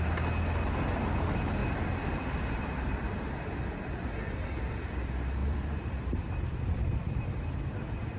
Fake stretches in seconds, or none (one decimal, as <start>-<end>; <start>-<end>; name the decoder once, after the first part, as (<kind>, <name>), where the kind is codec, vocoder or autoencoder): 1.6-3.1 (vocoder, BigVGAN v2); 5.4-8.2